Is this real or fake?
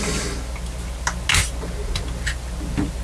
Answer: real